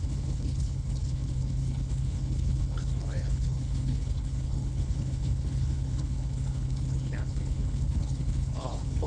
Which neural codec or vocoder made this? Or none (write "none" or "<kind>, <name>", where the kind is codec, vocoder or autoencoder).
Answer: codec, HILCodec